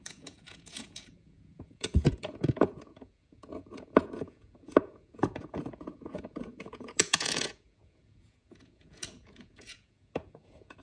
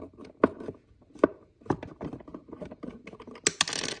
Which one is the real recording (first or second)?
second